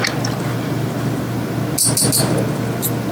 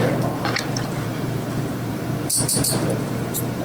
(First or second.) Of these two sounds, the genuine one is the first